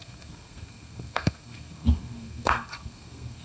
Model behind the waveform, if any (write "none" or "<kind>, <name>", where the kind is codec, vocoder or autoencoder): codec, SNAC